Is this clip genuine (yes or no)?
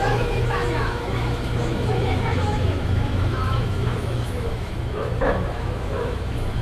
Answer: no